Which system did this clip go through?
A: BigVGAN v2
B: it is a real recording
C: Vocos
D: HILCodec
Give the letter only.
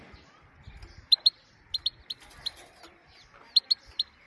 B